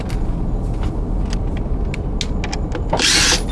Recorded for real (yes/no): yes